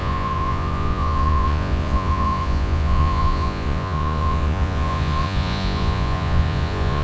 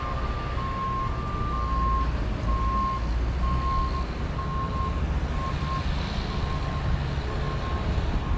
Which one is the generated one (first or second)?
first